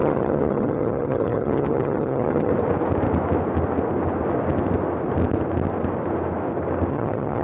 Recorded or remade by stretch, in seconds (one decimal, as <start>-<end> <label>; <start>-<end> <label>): 0.0-2.5 remade; 2.5-6.9 recorded; 6.9-7.4 remade